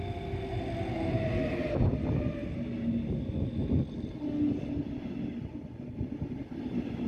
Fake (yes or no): no